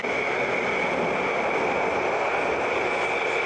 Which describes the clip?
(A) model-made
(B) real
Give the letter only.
B